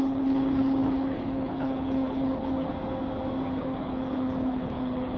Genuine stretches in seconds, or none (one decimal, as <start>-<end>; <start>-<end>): 2.7-3.6

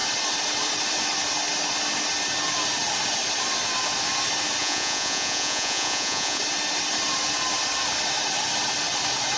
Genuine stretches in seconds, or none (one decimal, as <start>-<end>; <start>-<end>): 0.0-4.6; 6.4-9.4

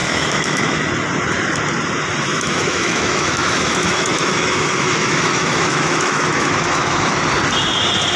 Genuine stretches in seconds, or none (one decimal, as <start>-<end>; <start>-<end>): 0.8-2.3; 7.1-8.2

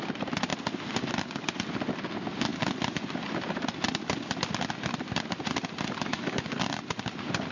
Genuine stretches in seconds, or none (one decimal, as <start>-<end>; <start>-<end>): 0.0-6.1; 6.6-7.5

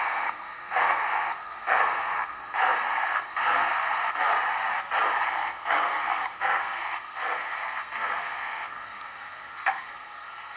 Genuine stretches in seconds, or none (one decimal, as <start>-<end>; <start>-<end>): 4.3-5.2

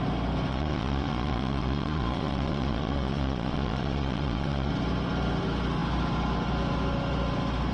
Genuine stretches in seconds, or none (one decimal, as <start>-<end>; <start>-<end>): 0.0-0.5; 4.7-7.7

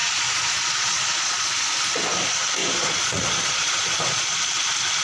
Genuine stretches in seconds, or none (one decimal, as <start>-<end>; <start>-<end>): 1.5-2.6; 4.3-5.0